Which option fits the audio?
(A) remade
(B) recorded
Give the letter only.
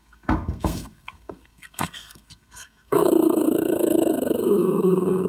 A